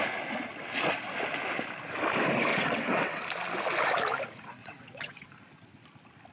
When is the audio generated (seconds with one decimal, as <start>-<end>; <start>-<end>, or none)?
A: 2.5-3.2; 4.6-5.3